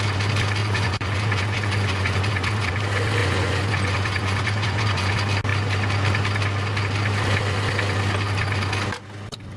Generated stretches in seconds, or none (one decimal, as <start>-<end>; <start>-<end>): 0.6-2.7; 3.2-5.1